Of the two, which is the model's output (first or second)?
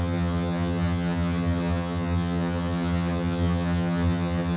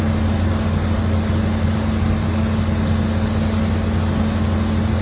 first